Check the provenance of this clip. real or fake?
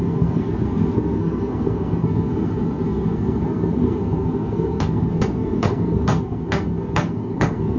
fake